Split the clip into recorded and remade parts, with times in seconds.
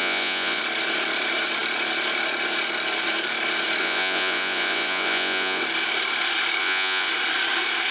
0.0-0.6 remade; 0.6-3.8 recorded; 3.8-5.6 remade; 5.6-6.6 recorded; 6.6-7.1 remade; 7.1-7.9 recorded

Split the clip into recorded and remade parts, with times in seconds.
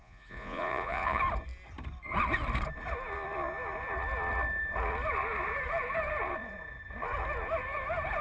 0.0-1.2 remade; 1.2-8.2 recorded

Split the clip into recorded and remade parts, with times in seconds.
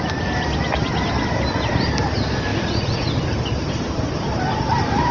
0.0-2.5 recorded; 2.5-3.1 remade; 3.1-5.1 recorded